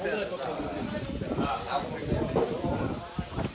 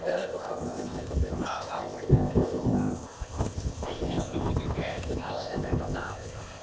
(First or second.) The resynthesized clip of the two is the second